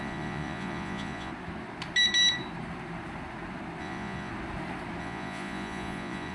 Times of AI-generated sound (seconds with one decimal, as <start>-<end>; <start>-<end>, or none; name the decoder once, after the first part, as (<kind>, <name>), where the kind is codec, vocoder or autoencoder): 0.0-1.3 (vocoder, Vocos); 3.8-4.3; 5.0-6.3